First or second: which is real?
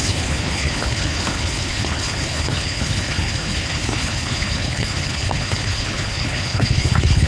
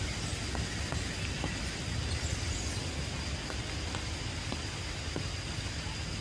second